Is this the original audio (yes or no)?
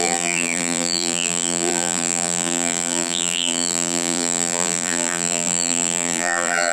no